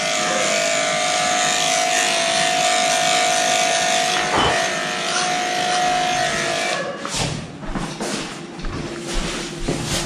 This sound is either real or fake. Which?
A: real